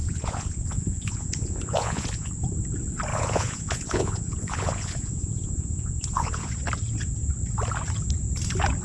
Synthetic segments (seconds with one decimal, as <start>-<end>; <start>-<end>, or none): 0.0-2.3; 3.1-6.5